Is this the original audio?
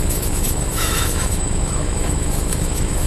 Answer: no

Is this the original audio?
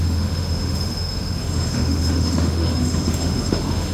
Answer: no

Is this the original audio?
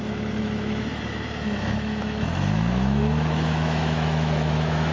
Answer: no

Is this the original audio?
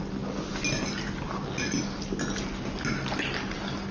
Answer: yes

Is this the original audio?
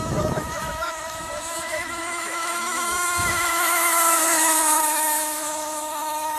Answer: no